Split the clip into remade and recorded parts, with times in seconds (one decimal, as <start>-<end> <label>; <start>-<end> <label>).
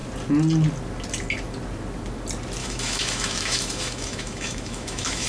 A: 0.0-2.6 recorded; 2.6-5.3 remade